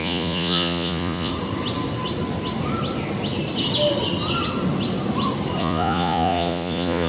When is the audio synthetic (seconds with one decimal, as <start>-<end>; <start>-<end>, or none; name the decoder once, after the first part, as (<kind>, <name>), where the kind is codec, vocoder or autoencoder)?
0.0-1.3 (vocoder, Vocos); 5.6-7.1